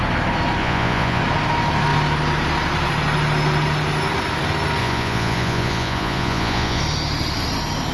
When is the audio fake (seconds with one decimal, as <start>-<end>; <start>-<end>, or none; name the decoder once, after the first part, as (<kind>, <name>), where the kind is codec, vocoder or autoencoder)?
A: 0.6-1.2 (vocoder, Vocos); 4.8-6.8